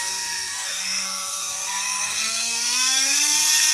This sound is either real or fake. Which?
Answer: fake